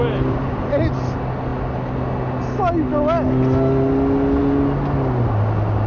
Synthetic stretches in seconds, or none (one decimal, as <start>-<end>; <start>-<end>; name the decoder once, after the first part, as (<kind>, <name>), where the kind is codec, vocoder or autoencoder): none